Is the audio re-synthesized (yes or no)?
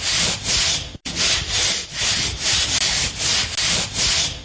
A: no